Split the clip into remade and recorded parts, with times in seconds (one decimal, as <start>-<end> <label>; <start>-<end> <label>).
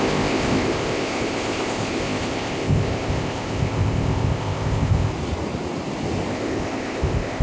0.0-5.1 remade; 5.1-6.3 recorded; 6.3-7.4 remade